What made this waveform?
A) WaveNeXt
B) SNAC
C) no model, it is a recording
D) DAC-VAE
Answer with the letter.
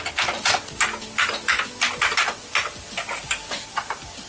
C